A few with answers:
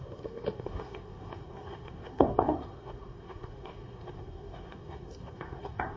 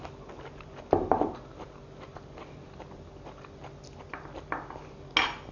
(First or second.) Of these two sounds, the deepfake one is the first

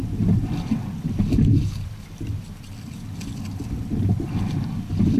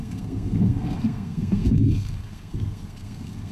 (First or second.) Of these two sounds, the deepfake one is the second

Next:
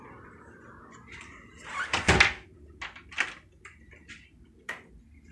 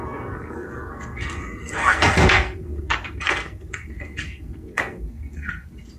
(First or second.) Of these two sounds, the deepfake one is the second